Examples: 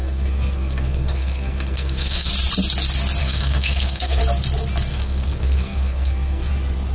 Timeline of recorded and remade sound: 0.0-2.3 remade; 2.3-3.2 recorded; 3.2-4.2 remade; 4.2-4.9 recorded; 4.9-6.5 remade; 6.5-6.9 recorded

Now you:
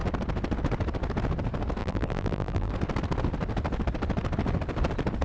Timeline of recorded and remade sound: 0.0-1.8 recorded; 1.8-2.7 remade; 2.7-5.2 recorded

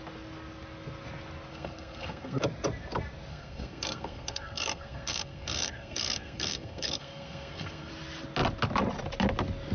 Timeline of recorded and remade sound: 0.0-1.5 recorded; 1.5-2.4 remade; 2.4-3.3 recorded; 3.3-7.9 remade; 7.9-9.7 recorded

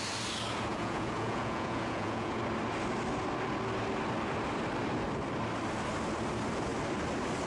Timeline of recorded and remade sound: 0.0-0.7 recorded; 0.7-2.4 remade; 2.4-7.5 recorded

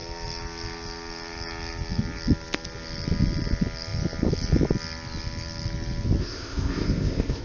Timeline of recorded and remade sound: 0.0-6.2 recorded; 6.2-7.4 remade

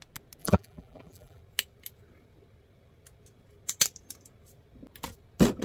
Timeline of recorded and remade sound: 0.0-0.4 recorded; 0.4-1.4 remade; 1.4-5.6 recorded